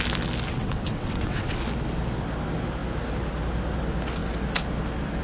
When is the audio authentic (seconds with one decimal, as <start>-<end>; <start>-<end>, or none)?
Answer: 0.0-0.5; 1.6-5.2